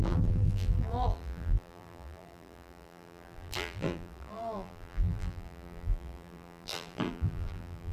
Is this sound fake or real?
fake